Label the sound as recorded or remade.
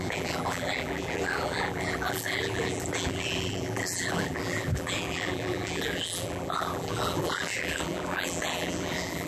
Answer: remade